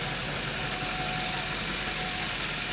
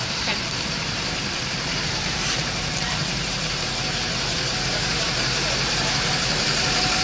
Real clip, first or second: first